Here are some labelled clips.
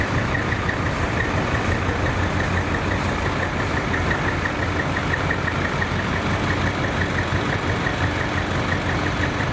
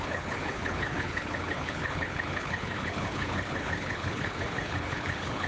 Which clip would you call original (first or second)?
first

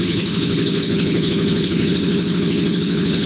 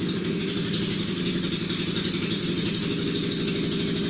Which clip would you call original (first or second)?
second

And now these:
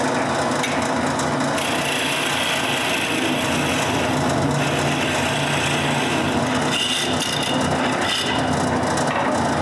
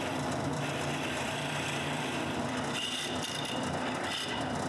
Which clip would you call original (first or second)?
first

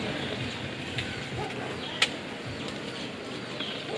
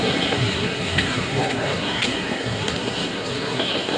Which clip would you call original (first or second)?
first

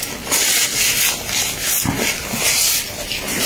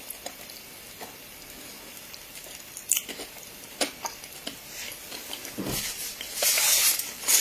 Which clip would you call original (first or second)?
first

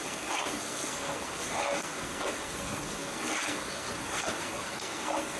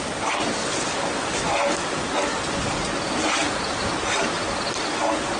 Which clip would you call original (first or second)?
second